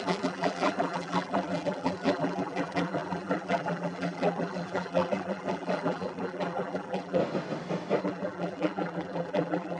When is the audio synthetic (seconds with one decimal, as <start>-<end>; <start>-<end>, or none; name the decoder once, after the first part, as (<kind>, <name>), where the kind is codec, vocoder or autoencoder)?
0.0-7.2 (vocoder, BigVGAN v2); 8.0-9.8